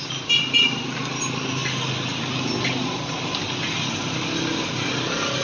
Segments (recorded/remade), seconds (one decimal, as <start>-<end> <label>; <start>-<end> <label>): 0.0-5.4 recorded